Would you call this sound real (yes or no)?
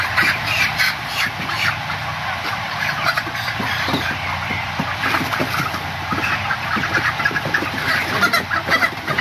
yes